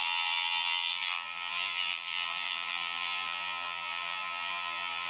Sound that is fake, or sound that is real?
fake